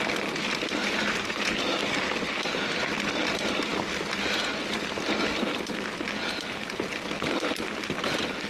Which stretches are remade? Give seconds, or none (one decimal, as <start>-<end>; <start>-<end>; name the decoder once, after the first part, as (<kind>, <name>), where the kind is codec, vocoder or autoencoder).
0.8-1.8 (vocoder, BigVGAN v2)